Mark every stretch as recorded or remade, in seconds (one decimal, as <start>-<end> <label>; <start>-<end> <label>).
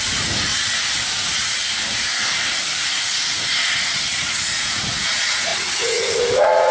0.0-0.5 remade; 0.5-4.2 recorded; 4.2-6.7 remade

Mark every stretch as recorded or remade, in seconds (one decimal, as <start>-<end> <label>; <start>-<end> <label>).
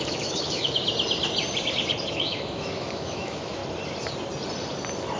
0.0-0.8 remade; 0.8-2.1 recorded; 2.1-3.6 remade; 3.6-5.2 recorded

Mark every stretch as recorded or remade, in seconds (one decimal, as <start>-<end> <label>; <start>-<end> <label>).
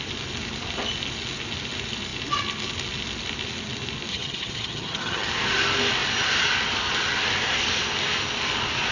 0.0-4.1 recorded; 4.1-5.3 remade; 5.3-8.9 recorded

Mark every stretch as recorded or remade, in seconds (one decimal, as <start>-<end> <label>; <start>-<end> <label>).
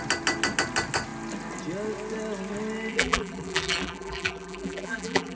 0.0-2.9 recorded; 2.9-5.4 remade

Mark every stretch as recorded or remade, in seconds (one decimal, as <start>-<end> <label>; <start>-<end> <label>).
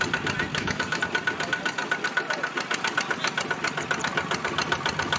0.0-0.5 recorded; 0.5-1.0 remade; 1.0-5.2 recorded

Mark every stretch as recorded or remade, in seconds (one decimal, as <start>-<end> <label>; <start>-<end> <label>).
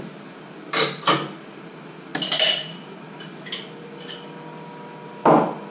0.0-5.7 recorded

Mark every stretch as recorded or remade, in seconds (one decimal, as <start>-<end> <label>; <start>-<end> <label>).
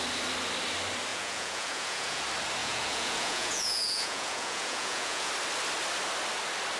0.0-1.1 recorded; 1.1-2.2 remade; 2.2-2.6 recorded; 2.6-5.3 remade; 5.3-6.8 recorded